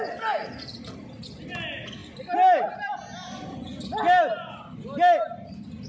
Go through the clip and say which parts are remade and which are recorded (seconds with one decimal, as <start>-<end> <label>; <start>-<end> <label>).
0.0-5.9 recorded